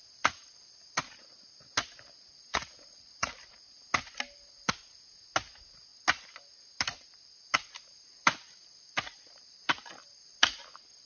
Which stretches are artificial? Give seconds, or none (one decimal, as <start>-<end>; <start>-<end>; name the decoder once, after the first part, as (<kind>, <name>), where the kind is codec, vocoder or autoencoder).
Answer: 2.5-3.4 (vocoder, Vocos)